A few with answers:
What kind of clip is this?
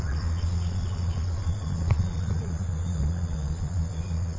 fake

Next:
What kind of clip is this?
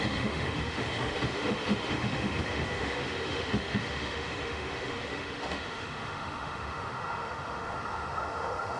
fake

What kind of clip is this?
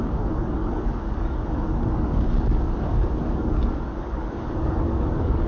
fake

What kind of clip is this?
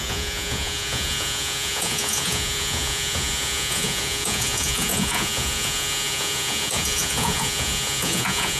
fake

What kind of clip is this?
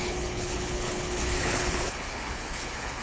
fake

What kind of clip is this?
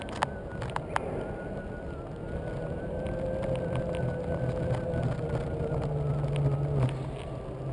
real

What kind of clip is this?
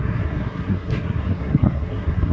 fake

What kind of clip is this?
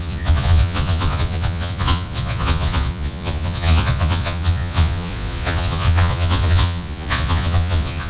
fake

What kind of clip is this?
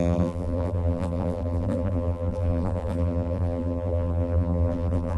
fake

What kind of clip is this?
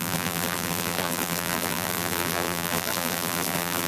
fake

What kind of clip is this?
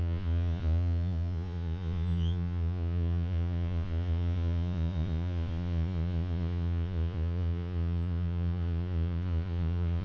fake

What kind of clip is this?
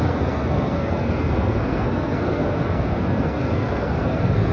fake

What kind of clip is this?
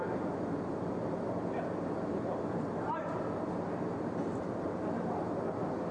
real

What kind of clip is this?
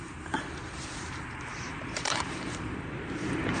fake